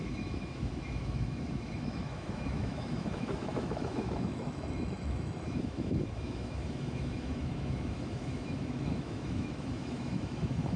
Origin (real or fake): fake